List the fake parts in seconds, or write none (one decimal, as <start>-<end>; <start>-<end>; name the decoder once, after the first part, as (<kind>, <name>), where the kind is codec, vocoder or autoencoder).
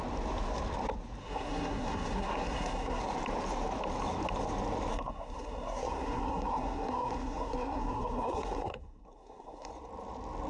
1.2-3.0 (codec, SNAC); 4.9-9.7